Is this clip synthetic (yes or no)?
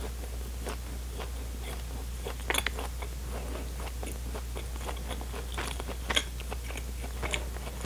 no